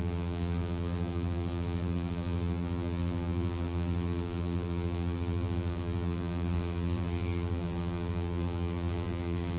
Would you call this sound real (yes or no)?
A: no